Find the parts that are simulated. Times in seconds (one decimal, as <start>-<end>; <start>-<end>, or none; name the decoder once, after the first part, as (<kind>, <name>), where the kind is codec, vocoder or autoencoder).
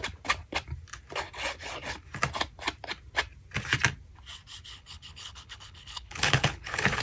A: 4.7-7.0 (codec, HILCodec)